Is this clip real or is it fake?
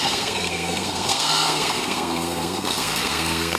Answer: fake